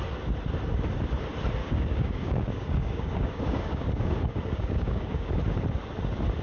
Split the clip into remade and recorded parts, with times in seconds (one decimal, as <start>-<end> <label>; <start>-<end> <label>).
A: 0.0-1.6 recorded; 1.6-5.4 remade; 5.4-6.4 recorded